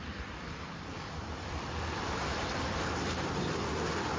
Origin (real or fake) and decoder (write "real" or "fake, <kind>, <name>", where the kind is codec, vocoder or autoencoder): fake, vocoder, BigVGAN v2